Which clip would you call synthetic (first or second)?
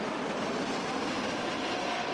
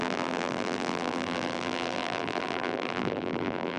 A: second